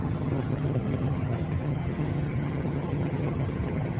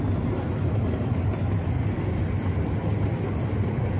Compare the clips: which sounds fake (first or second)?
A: first